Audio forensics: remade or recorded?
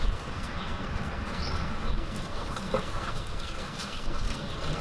remade